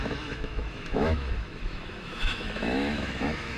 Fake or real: fake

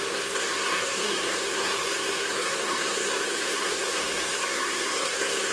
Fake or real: fake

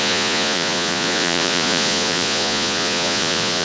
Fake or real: fake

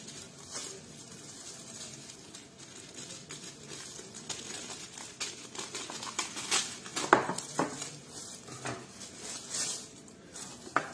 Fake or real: real